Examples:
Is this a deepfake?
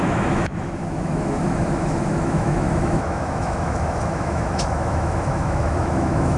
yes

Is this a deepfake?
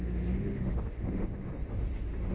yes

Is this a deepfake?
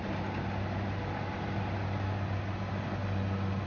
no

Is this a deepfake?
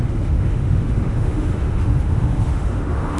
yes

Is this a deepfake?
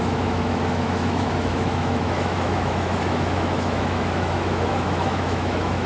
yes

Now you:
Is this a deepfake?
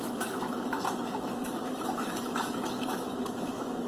yes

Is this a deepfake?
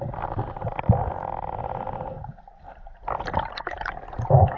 no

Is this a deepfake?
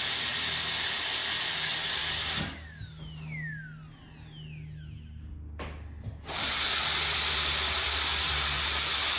no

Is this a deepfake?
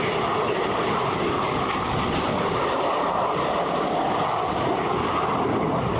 no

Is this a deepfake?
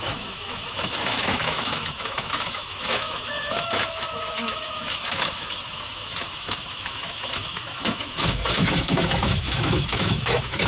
yes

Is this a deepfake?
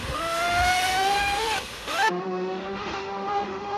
yes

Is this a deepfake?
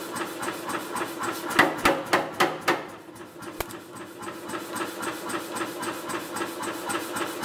no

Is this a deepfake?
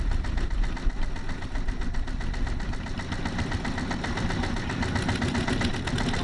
no